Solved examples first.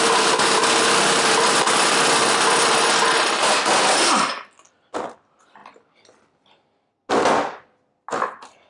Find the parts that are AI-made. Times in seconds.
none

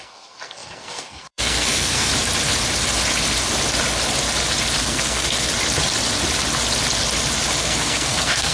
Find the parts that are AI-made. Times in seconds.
0.0-2.1 (codec, SNAC); 4.8-5.5; 7.6-8.5

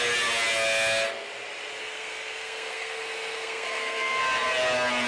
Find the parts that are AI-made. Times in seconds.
1.8-4.2 (codec, SNAC)